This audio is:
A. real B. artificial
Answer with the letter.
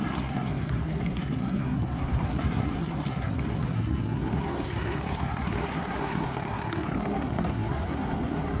B